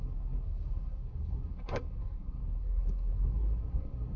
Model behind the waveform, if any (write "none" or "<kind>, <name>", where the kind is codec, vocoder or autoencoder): codec, SNAC